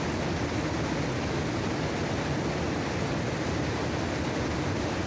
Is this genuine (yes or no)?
yes